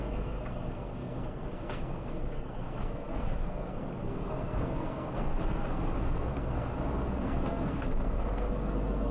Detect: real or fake fake